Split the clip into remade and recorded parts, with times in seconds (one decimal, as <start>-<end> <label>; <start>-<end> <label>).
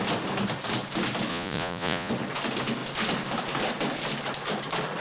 0.0-1.3 recorded; 1.3-2.1 remade; 2.1-5.0 recorded